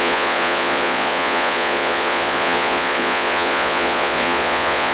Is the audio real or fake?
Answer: fake